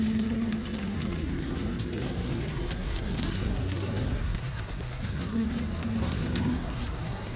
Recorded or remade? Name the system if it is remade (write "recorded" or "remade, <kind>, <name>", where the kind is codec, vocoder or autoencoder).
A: remade, codec, SNAC